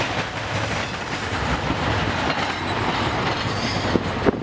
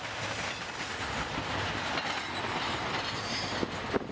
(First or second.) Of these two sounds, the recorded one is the second